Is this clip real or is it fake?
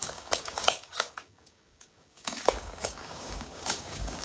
fake